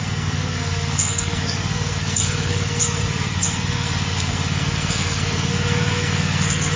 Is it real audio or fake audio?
fake